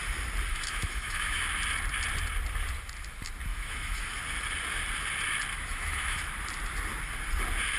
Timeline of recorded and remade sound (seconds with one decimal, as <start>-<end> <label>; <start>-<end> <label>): 0.0-0.5 recorded; 0.5-1.4 remade; 1.4-3.5 recorded; 3.5-4.2 remade; 4.2-5.5 recorded; 5.5-6.2 remade; 6.2-7.8 recorded